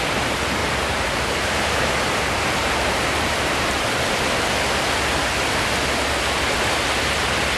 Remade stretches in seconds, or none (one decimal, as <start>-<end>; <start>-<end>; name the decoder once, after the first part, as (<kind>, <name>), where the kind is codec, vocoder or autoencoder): 0.6-3.8 (vocoder, BigVGAN v2)